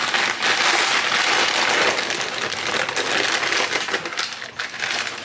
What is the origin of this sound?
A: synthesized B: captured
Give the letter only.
B